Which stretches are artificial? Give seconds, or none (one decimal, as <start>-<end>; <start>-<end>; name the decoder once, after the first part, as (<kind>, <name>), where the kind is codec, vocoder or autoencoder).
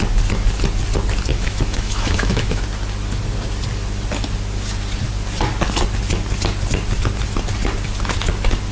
1.3-2.6 (autoencoder, DAC-VAE)